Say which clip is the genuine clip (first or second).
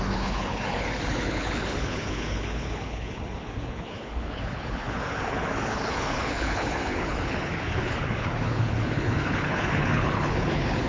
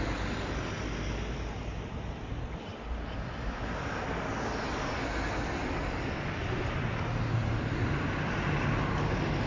second